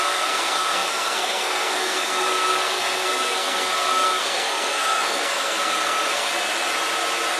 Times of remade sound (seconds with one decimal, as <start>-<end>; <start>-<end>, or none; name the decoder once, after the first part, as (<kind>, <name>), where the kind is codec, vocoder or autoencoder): 0.0-6.3 (codec, SNAC)